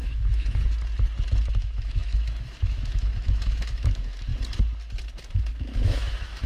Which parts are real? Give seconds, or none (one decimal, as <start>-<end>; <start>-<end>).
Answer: 0.6-1.5; 4.3-5.0